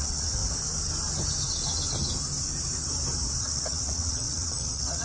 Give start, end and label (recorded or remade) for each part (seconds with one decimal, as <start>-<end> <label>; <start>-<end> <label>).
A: 0.0-0.4 remade; 0.4-3.4 recorded; 3.4-5.0 remade